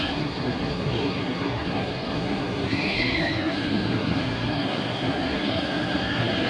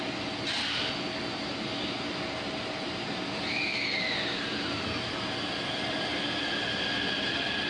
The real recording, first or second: second